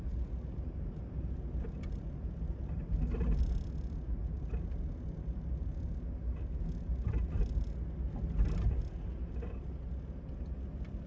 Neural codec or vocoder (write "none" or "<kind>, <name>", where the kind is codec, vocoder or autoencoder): none